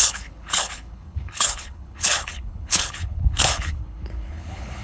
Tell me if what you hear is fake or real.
fake